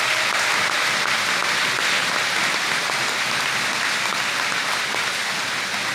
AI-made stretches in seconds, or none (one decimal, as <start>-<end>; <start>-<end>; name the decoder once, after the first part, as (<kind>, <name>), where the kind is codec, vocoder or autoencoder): none